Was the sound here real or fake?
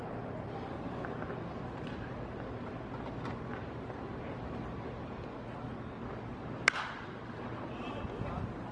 real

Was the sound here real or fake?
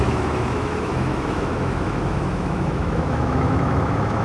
fake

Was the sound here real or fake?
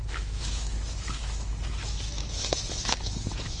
fake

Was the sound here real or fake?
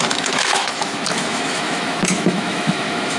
fake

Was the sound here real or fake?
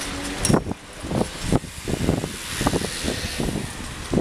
real